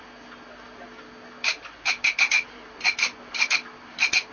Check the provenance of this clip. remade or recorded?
recorded